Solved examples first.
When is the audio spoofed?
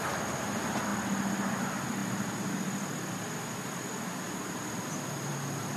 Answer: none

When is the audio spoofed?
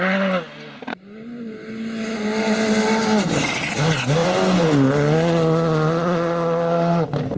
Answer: none